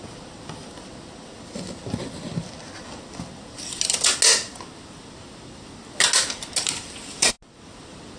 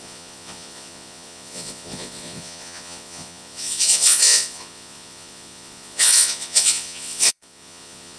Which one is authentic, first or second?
first